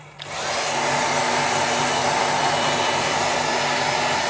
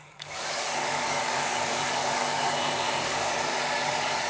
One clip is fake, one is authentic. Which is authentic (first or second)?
first